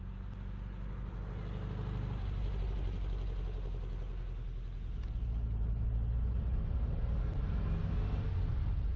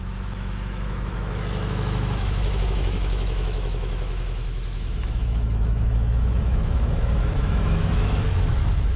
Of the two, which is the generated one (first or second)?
second